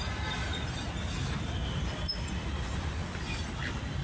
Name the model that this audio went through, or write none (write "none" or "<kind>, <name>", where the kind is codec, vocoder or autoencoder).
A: none